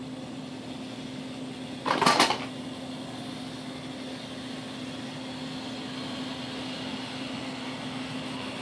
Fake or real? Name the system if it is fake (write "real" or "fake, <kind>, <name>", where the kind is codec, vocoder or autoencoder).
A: real